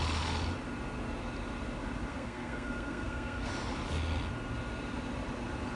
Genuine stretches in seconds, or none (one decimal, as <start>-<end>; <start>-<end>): 0.0-2.1; 3.5-5.8